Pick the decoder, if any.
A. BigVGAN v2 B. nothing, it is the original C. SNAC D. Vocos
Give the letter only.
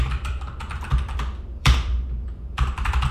A